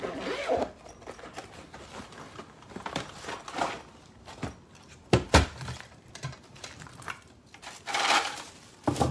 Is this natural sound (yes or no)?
no